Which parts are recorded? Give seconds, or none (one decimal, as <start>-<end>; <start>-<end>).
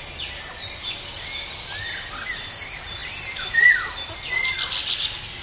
0.0-5.4